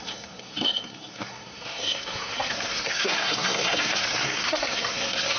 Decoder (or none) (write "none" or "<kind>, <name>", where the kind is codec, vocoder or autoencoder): codec, SNAC